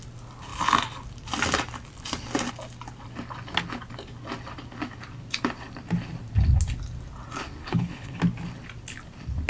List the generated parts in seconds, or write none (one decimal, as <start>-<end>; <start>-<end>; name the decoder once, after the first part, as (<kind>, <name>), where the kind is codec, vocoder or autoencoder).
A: 7.6-8.2 (codec, HILCodec)